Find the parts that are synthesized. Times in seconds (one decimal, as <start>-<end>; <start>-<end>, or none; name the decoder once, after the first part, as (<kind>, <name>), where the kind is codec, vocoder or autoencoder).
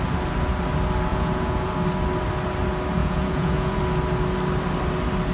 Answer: 1.1-1.7 (vocoder, Vocos); 3.0-3.8